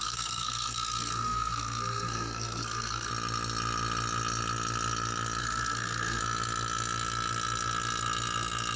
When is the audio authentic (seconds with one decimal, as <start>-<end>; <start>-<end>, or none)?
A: 3.1-5.4; 6.2-8.8